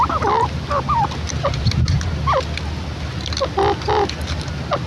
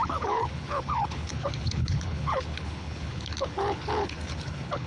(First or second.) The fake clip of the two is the second